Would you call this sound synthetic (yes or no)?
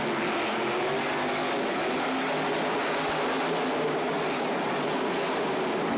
no